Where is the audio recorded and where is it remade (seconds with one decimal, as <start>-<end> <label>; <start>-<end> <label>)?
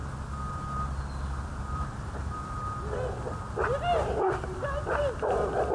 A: 0.0-1.7 recorded; 1.7-3.7 remade; 3.7-5.0 recorded; 5.0-5.7 remade